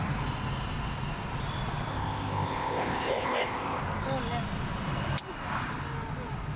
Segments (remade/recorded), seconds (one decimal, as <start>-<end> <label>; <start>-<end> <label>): 0.0-1.9 recorded; 1.9-3.8 remade; 3.8-6.6 recorded